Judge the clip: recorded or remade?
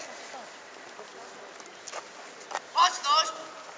recorded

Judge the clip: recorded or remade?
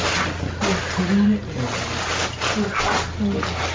recorded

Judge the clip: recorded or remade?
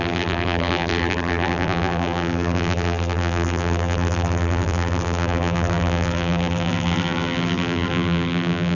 remade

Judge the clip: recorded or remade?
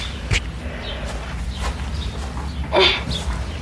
recorded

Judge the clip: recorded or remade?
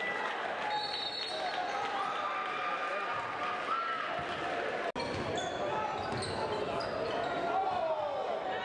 recorded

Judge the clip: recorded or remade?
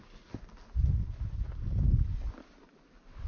recorded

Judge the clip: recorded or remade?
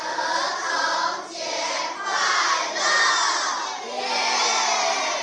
remade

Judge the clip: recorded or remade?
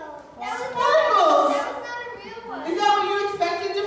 recorded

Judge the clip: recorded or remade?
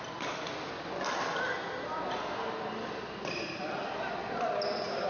recorded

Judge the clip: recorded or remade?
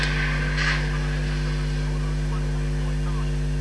recorded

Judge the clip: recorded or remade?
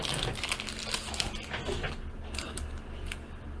recorded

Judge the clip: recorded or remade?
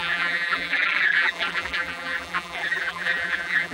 remade